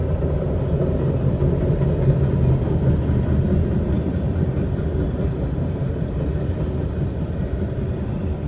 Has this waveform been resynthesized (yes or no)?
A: no